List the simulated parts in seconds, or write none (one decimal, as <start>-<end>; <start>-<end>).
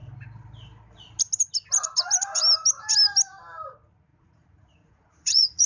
4.1-5.7